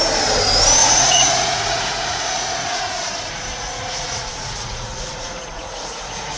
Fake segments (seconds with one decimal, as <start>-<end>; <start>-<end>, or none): 0.8-3.1; 3.5-6.4